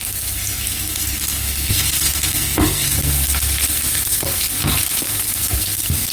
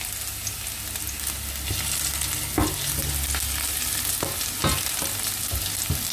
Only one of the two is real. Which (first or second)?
second